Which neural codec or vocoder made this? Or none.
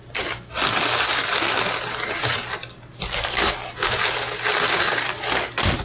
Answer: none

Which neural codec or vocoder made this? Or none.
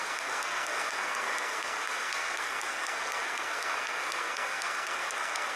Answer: codec, SNAC